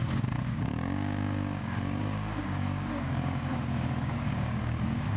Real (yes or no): no